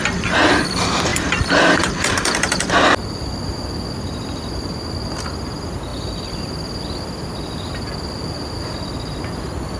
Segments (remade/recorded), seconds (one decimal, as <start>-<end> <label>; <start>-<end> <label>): 0.0-1.1 recorded; 1.1-3.3 remade; 3.3-5.9 recorded; 5.9-8.8 remade; 8.8-9.8 recorded